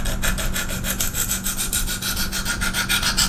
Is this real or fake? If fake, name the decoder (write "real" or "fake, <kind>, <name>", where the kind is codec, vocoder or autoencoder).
real